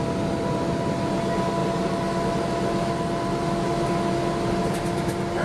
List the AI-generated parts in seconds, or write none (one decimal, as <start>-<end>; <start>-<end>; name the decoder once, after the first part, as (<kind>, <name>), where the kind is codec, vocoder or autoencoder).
none